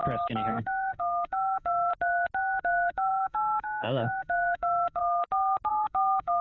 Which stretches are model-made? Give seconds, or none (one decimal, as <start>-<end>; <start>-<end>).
0.5-1.9; 2.6-5.0; 5.7-6.4